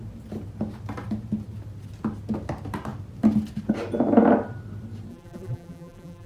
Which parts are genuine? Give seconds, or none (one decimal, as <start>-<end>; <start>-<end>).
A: 0.0-5.1